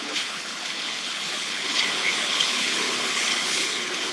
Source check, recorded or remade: remade